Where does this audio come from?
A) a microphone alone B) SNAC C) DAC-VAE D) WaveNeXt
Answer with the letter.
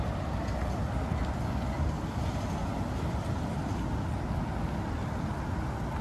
A